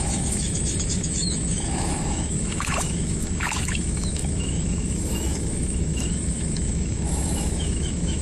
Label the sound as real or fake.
fake